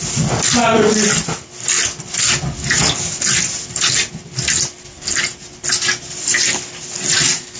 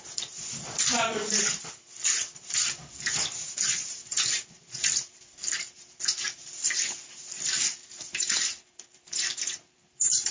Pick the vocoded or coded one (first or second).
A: second